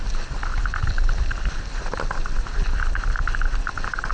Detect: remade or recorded recorded